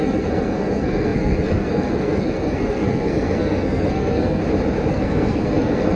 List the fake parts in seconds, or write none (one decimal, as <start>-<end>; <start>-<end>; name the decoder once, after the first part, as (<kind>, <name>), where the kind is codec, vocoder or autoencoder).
0.0-4.4 (codec, SNAC); 4.9-6.0